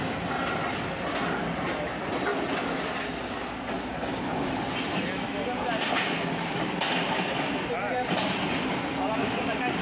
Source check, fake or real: real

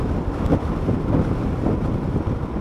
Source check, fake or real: real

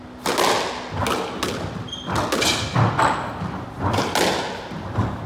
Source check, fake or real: real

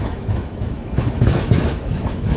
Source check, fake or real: fake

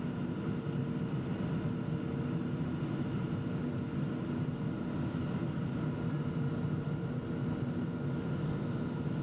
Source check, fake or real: real